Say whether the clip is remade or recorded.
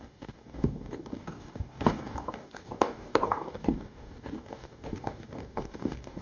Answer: remade